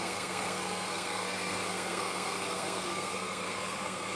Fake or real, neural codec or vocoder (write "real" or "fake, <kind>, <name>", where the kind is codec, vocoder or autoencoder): fake, codec, SNAC